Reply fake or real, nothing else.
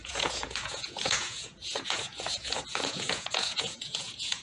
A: fake